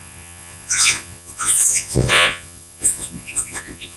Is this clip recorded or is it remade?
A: remade